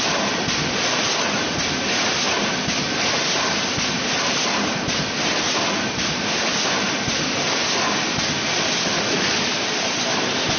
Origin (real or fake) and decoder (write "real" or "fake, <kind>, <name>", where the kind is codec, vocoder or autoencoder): real